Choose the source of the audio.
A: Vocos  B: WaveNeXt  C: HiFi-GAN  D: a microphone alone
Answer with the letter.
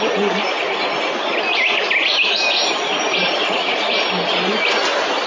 D